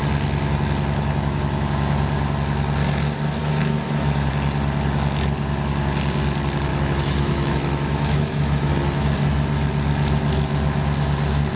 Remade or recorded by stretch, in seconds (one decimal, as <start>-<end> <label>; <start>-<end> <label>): 0.0-3.4 recorded; 3.4-4.3 remade; 4.3-6.7 recorded; 6.7-8.7 remade; 8.7-11.6 recorded